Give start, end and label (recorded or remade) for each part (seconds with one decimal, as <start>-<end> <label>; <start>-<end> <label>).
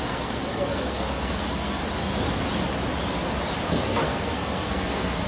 0.0-1.8 remade; 1.8-3.7 recorded; 3.7-5.3 remade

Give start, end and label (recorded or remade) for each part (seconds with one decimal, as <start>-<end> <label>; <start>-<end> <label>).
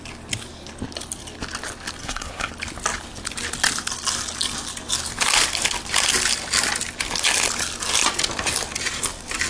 0.0-2.0 recorded; 2.0-2.5 remade; 2.5-9.5 recorded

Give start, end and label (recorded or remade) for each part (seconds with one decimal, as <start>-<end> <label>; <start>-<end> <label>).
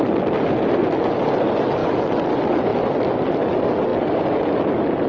0.0-5.1 recorded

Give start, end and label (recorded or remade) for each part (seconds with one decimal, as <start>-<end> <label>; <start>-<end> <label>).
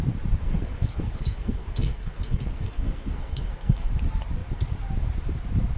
0.0-0.4 recorded; 0.4-3.9 remade; 3.9-5.8 recorded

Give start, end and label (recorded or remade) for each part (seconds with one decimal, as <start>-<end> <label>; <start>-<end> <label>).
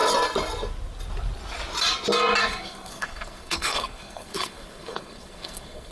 0.0-2.4 recorded; 2.4-5.9 remade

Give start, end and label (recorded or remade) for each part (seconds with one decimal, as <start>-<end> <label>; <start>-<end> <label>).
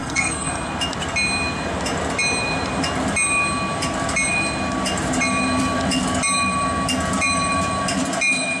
0.0-0.5 remade; 0.5-8.6 recorded